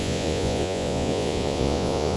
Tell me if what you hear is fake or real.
fake